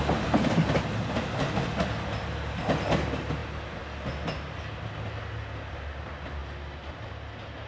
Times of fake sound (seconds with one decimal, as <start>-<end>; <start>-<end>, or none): none